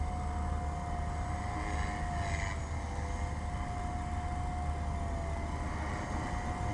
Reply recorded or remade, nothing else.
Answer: recorded